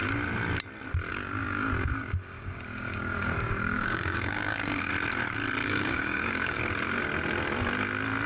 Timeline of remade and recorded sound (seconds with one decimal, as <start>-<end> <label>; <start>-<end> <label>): 0.0-1.1 recorded; 1.1-4.9 remade; 4.9-5.6 recorded; 5.6-6.6 remade; 6.6-8.3 recorded